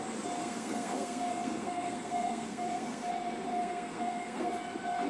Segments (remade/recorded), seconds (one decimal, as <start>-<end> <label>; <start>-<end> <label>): 0.0-0.4 recorded; 0.4-3.1 remade; 3.1-3.5 recorded; 3.5-4.5 remade; 4.5-5.1 recorded